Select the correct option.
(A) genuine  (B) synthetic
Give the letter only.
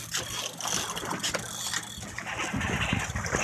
A